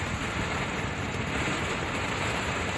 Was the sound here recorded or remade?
remade